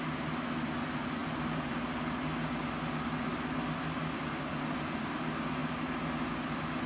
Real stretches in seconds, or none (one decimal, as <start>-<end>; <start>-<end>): 0.0-6.9